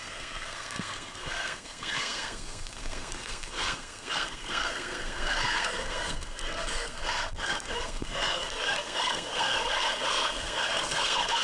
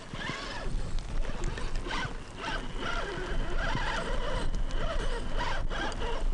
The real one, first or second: second